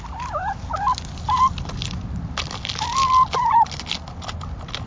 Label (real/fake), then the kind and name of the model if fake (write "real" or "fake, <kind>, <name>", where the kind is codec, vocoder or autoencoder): real